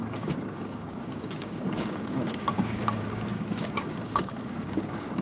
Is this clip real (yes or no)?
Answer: no